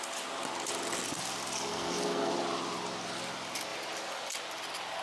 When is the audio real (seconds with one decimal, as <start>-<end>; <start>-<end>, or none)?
0.0-1.7; 2.3-5.0